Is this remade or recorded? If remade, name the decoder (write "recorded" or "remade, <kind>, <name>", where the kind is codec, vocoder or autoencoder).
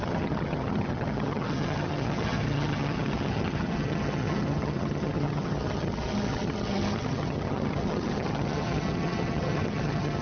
remade, vocoder, HiFi-GAN